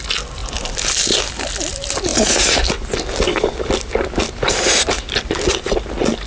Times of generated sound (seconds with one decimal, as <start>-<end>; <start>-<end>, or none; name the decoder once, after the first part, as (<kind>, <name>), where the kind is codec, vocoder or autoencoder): none